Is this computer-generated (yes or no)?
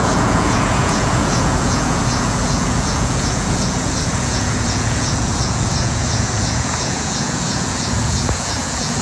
yes